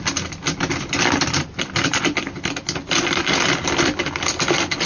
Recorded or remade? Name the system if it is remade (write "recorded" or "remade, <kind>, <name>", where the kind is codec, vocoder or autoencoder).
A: recorded